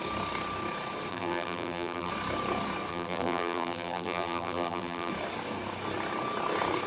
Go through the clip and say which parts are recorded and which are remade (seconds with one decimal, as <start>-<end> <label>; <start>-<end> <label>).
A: 0.0-1.1 recorded; 1.1-2.1 remade; 2.1-2.9 recorded; 2.9-5.1 remade; 5.1-6.9 recorded